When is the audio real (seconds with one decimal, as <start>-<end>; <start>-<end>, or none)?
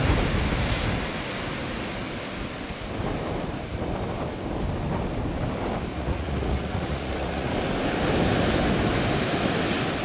0.0-5.9; 7.5-10.0